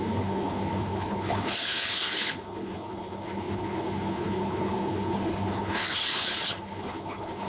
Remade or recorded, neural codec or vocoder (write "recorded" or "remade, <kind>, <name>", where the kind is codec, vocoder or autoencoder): remade, codec, HILCodec